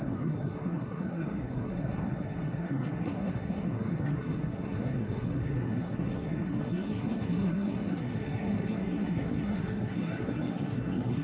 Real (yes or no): no